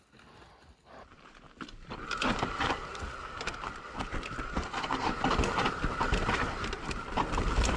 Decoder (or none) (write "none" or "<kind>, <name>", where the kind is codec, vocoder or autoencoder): none